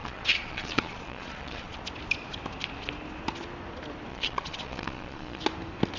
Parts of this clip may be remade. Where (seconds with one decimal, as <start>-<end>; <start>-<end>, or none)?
0.0-1.8; 4.1-5.4